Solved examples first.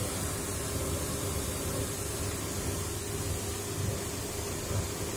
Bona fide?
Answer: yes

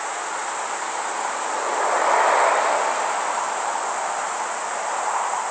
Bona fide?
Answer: yes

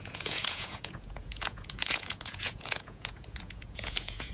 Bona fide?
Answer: no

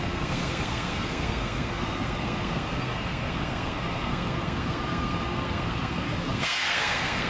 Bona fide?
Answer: no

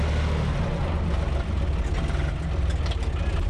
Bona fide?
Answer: yes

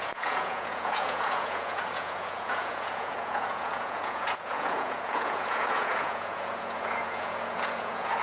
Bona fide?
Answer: no